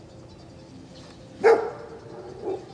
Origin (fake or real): real